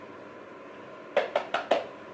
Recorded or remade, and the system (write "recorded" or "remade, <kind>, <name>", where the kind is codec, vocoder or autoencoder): recorded